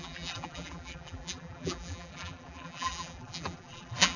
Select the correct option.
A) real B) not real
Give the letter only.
B